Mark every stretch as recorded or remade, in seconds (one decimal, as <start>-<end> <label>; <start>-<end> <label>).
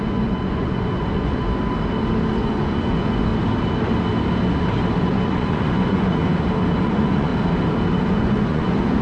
0.0-1.6 remade; 1.6-2.3 recorded; 2.3-3.3 remade; 3.3-5.0 recorded; 5.0-6.2 remade; 6.2-6.8 recorded; 6.8-7.3 remade; 7.3-8.1 recorded; 8.1-9.0 remade